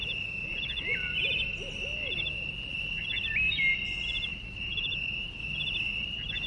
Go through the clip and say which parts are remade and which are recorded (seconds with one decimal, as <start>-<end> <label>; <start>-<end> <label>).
0.0-4.3 recorded; 4.3-5.1 remade; 5.1-6.5 recorded